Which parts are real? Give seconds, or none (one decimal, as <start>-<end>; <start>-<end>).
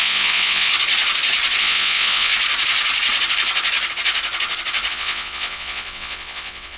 0.7-1.6; 2.3-4.9